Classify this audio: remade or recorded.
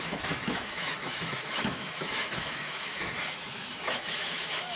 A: remade